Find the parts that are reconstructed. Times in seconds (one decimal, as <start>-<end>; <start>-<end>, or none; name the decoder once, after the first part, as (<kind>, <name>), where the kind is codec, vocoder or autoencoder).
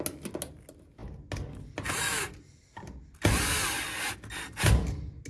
none